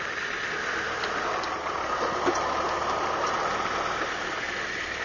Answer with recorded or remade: recorded